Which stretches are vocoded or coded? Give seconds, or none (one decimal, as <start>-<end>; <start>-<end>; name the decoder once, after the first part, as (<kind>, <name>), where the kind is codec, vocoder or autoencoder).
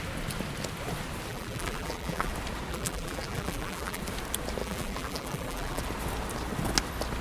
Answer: 1.3-2.3 (vocoder, BigVGAN v2); 2.7-4.0; 4.6-5.8